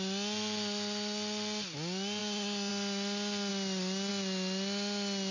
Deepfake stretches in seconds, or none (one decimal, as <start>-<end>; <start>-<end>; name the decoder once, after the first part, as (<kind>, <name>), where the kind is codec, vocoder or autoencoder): none